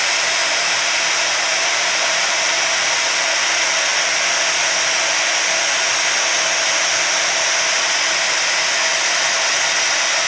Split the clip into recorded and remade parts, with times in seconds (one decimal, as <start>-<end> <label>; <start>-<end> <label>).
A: 0.0-0.4 recorded; 0.4-2.4 remade; 2.4-10.3 recorded